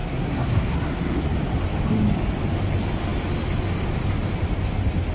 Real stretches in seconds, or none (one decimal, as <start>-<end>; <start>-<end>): 1.2-5.1